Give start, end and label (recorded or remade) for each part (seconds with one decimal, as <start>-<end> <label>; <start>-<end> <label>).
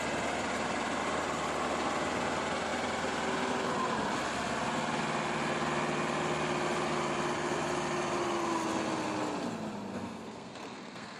0.0-9.9 recorded; 9.9-11.2 remade